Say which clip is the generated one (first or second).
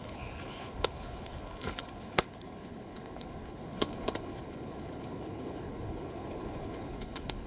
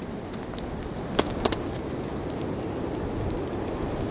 first